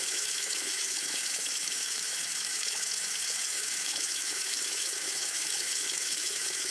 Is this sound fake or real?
fake